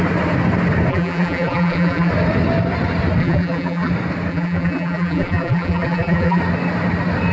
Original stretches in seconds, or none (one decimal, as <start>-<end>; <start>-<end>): 0.0-0.9; 2.1-3.2; 3.9-4.3; 6.4-7.3